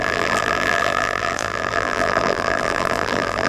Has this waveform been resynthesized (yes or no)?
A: yes